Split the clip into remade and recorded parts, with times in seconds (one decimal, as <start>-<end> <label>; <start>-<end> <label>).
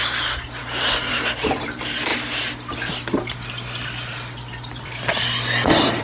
0.0-0.6 recorded; 0.6-2.1 remade; 2.1-6.0 recorded